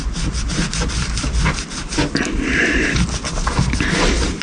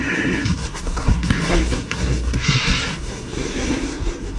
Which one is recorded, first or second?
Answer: first